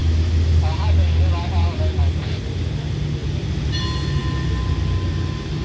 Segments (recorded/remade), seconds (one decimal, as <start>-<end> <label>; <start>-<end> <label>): 0.0-5.6 recorded